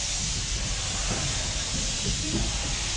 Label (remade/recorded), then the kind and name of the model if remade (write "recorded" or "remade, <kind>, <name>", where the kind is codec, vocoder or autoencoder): recorded